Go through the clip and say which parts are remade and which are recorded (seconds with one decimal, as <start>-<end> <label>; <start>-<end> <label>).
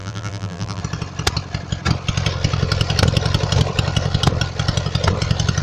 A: 0.0-0.8 remade; 0.8-5.6 recorded